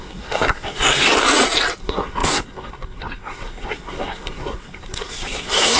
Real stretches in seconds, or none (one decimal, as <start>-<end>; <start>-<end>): 1.1-1.8